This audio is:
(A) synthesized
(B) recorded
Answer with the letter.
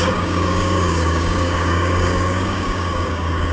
A